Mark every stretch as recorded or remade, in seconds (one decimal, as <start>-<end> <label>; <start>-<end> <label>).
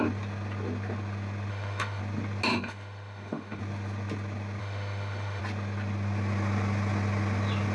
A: 0.0-1.5 recorded; 1.5-2.0 remade; 2.0-2.5 recorded; 2.5-3.6 remade; 3.6-4.6 recorded; 4.6-5.4 remade; 5.4-7.7 recorded